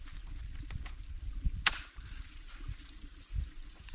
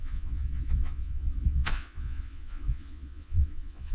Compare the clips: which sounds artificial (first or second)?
second